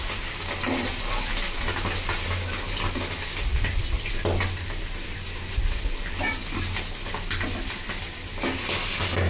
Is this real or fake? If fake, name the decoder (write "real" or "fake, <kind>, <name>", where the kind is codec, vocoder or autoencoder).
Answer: real